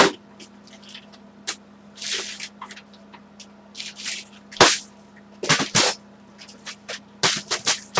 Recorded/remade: recorded